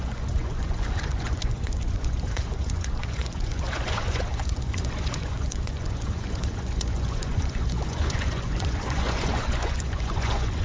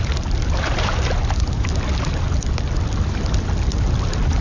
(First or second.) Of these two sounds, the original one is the second